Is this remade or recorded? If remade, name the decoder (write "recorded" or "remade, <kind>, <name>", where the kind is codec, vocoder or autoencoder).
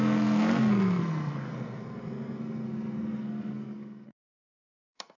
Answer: remade, codec, SNAC